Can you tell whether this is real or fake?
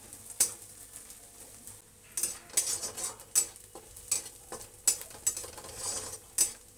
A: real